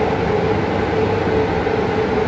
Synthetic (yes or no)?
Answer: no